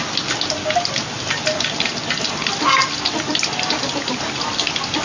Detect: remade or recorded recorded